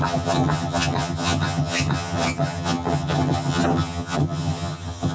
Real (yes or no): no